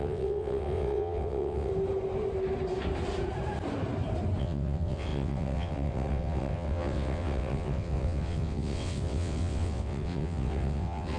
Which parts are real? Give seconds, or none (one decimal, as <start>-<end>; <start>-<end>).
1.7-4.4